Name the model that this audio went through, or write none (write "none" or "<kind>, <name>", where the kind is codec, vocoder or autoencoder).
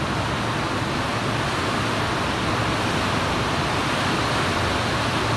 none